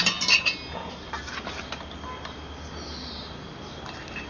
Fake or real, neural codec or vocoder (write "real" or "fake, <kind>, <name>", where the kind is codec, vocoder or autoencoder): real